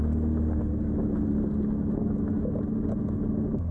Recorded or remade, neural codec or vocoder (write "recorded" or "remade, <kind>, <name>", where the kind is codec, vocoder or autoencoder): recorded